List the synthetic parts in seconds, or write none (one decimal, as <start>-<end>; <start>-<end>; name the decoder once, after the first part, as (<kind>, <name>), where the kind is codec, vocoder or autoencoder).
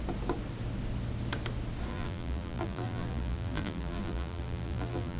1.9-5.2 (vocoder, BigVGAN v2)